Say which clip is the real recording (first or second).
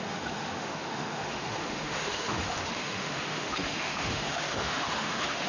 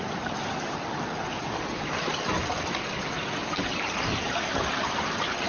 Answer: second